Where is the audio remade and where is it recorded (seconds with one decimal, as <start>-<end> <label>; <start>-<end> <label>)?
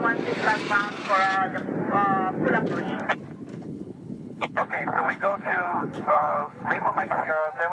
0.0-3.5 recorded; 3.5-7.3 remade; 7.3-7.7 recorded